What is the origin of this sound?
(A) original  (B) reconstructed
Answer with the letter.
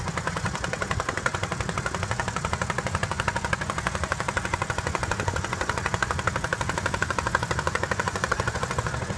B